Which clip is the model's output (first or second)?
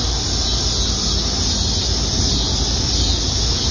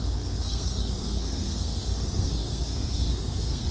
second